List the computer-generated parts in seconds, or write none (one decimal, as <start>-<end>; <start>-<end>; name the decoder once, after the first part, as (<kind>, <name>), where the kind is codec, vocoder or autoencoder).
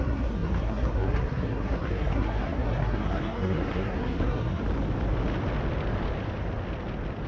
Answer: 0.0-4.6 (codec, SNAC)